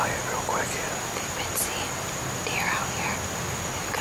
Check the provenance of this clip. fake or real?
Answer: real